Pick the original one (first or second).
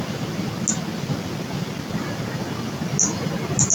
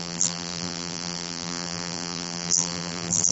first